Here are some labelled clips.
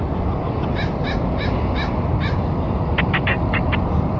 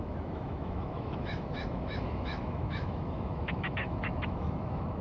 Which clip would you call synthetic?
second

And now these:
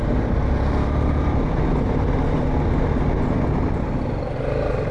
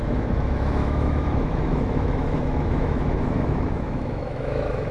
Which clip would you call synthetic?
second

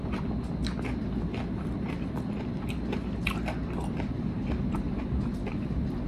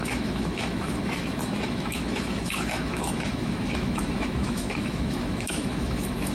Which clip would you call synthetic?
second